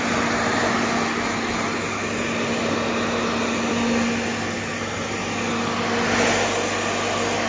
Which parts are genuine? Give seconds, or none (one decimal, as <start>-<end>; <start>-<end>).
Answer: 0.0-7.5